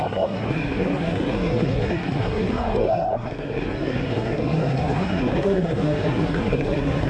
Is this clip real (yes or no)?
no